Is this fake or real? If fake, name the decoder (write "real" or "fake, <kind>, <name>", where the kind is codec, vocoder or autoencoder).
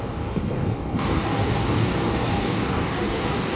fake, codec, DAC